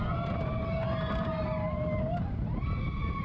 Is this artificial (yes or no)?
no